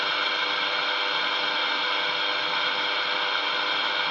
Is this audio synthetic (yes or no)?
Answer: no